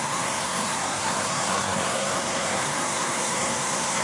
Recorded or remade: remade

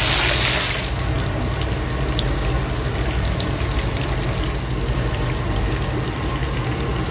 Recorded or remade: recorded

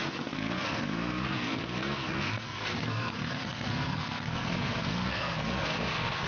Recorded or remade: remade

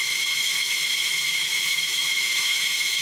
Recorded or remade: remade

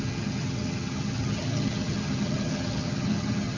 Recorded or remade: remade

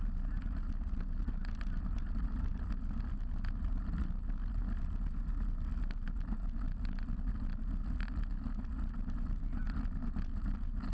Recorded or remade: recorded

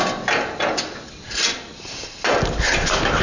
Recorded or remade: recorded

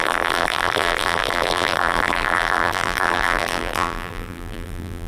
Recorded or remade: remade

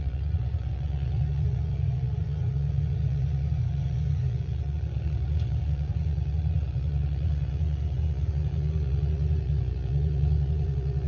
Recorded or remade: remade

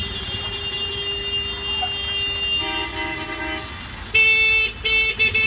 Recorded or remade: recorded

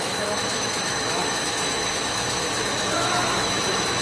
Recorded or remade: remade